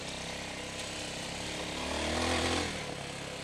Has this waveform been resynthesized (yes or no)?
no